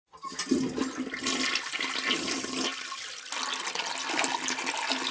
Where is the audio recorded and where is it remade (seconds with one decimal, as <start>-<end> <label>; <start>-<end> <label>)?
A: 0.0-5.1 recorded